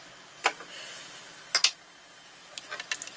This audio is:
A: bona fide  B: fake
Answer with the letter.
A